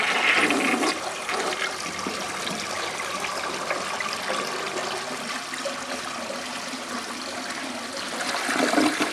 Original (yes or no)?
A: yes